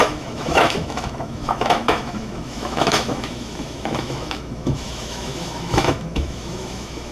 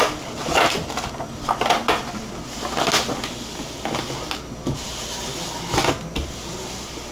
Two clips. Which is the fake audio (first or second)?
first